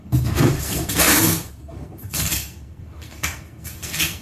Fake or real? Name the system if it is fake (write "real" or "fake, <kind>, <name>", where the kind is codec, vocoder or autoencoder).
fake, codec, SNAC